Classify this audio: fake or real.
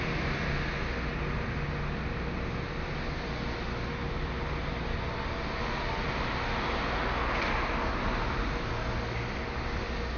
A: real